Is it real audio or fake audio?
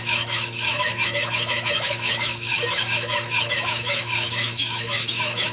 fake